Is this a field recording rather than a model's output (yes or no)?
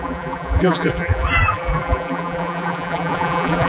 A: no